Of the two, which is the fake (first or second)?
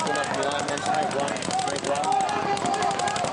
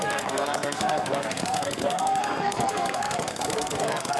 second